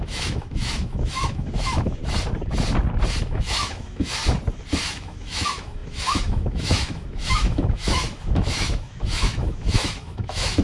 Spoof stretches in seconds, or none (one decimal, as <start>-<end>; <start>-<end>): 0.0-2.0; 3.2-4.2; 4.8-10.6